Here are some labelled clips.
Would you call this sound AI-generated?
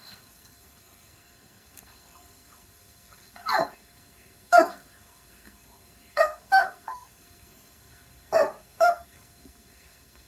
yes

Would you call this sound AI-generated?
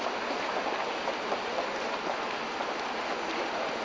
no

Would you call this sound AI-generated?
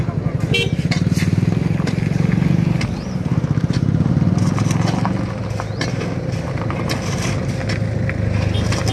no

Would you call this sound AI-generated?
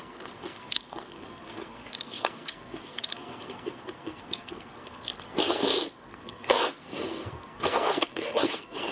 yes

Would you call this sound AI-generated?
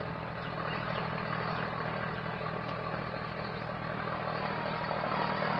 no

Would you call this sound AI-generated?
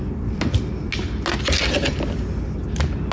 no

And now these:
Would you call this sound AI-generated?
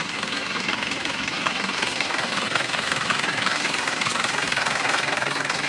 yes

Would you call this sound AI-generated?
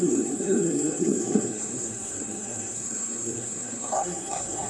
yes